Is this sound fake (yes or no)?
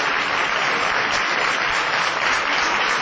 no